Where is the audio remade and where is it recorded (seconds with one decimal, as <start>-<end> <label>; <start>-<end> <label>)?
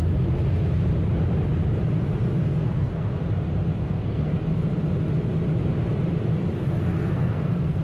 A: 0.0-2.5 recorded; 2.5-3.1 remade; 3.1-3.8 recorded; 3.8-4.4 remade; 4.4-6.8 recorded; 6.8-7.8 remade